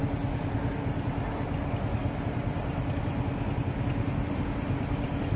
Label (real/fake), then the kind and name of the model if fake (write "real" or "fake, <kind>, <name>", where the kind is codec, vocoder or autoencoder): real